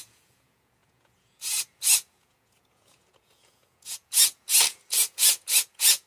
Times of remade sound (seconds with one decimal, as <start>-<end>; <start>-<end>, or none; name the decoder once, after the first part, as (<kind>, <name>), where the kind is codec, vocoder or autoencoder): 0.0-6.1 (vocoder, Vocos)

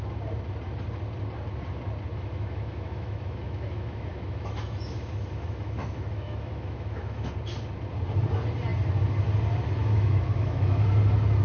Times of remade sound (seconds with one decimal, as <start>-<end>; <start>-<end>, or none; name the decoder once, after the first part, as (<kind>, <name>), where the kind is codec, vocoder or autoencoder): 2.1-7.3 (autoencoder, DAC-VAE); 9.8-10.9

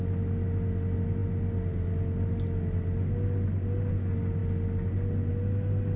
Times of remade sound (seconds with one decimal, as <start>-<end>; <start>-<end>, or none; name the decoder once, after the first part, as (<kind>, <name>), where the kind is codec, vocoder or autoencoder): none

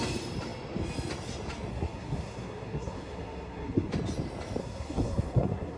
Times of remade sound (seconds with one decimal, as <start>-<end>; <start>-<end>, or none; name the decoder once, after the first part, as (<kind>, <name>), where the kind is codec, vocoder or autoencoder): 1.7-3.9 (codec, SNAC); 4.6-5.8

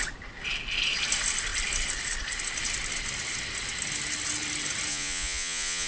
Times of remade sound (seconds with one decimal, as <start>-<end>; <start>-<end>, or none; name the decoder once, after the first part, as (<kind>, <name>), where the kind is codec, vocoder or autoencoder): 4.9-5.9 (vocoder, Vocos)

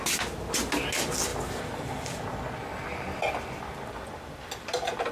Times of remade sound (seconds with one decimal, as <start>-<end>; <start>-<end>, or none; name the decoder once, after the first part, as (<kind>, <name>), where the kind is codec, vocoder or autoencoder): none

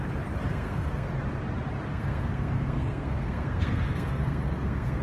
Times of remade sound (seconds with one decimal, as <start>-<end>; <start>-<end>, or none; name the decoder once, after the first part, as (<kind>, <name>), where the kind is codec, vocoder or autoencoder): 0.5-1.1 (codec, SNAC); 1.9-5.0

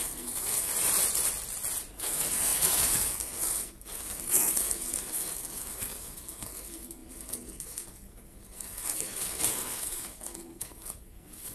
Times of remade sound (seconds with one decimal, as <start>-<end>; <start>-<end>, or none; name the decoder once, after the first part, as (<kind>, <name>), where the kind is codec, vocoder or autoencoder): 0.0-0.7 (codec, SNAC); 1.9-11.5